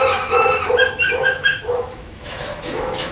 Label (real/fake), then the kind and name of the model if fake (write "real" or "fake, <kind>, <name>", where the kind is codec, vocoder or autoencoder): fake, autoencoder, DAC-VAE